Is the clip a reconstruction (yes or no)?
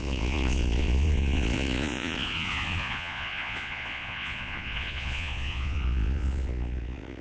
yes